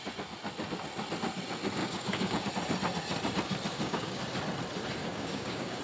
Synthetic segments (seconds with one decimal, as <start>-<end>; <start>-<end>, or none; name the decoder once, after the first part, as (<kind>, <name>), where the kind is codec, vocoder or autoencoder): 1.8-2.5 (codec, DAC); 3.7-4.2; 5.0-5.8